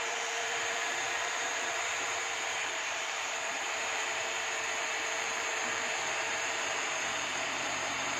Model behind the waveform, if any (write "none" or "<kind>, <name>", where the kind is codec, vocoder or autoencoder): vocoder, BigVGAN v2